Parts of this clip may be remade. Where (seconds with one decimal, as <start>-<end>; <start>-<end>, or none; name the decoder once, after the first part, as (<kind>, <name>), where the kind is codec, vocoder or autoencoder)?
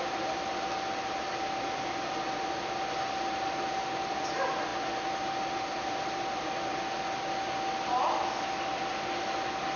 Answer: none